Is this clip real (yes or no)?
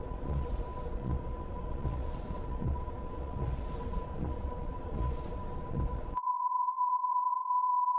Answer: no